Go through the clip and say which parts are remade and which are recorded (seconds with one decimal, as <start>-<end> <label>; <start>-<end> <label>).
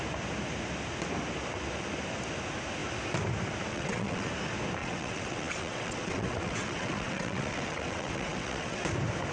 0.0-3.7 recorded; 3.7-4.3 remade; 4.3-4.8 recorded; 4.8-8.8 remade; 8.8-9.3 recorded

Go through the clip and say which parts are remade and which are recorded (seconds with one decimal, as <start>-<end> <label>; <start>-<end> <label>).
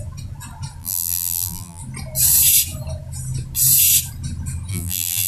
0.0-0.8 recorded; 0.8-1.8 remade; 1.8-4.7 recorded; 4.7-5.3 remade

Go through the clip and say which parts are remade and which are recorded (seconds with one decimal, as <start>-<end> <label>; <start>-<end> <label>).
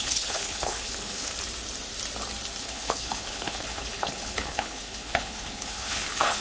0.0-1.3 remade; 1.3-2.6 recorded; 2.6-6.4 remade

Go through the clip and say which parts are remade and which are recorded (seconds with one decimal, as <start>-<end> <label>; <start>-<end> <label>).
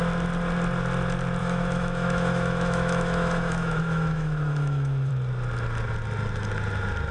0.0-1.4 recorded; 1.4-5.1 remade; 5.1-7.1 recorded